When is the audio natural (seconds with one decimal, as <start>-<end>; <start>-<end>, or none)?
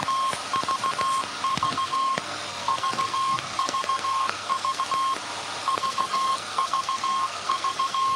0.0-1.5; 4.8-5.6